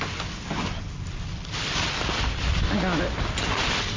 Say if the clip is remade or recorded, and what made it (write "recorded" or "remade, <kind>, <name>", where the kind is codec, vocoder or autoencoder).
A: recorded